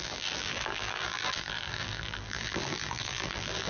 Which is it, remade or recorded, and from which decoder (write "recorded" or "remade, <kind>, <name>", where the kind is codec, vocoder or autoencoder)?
remade, vocoder, BigVGAN v2